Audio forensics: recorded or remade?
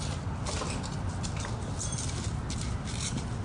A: recorded